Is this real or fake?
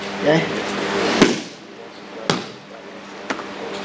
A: real